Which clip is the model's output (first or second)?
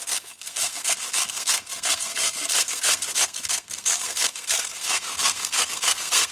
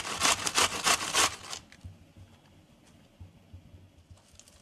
first